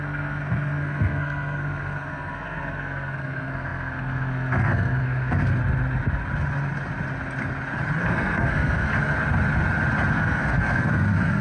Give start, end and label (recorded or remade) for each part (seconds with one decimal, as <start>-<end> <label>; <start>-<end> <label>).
0.0-5.6 remade; 5.6-8.0 recorded; 8.0-8.9 remade; 8.9-10.1 recorded; 10.1-11.4 remade

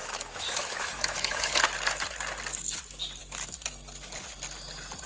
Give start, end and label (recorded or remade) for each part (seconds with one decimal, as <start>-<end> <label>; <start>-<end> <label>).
0.0-1.6 remade; 1.6-5.1 recorded

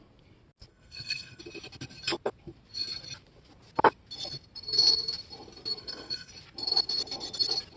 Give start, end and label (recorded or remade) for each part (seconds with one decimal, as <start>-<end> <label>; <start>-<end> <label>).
0.0-0.7 recorded; 0.7-1.4 remade; 1.4-5.8 recorded; 5.8-6.3 remade; 6.3-7.8 recorded